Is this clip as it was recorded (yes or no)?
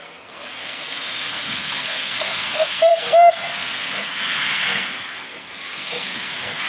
no